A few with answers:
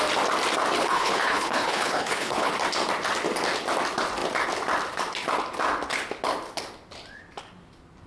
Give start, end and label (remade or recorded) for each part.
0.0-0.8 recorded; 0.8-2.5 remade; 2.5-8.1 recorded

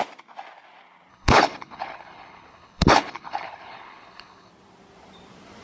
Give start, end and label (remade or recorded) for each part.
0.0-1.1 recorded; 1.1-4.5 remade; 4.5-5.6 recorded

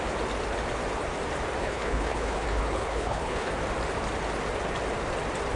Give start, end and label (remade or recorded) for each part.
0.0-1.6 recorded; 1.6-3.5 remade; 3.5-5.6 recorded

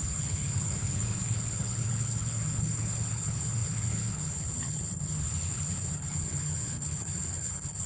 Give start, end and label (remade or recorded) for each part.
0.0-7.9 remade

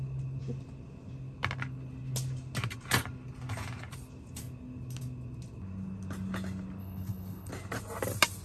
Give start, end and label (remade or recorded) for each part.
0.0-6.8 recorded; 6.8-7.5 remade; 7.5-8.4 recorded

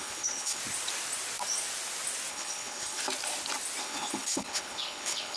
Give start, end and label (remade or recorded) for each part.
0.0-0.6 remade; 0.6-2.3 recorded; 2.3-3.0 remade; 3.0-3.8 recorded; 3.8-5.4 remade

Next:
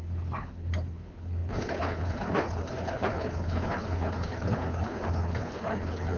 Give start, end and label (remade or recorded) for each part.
0.0-6.2 remade

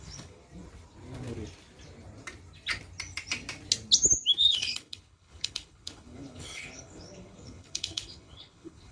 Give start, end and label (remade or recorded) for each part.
0.0-0.4 remade; 0.4-4.4 recorded; 4.4-8.9 remade